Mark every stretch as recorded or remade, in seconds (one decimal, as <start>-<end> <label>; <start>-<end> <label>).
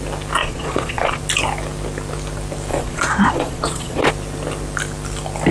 0.0-0.4 recorded; 0.4-1.2 remade; 1.2-2.7 recorded; 2.7-4.1 remade; 4.1-5.5 recorded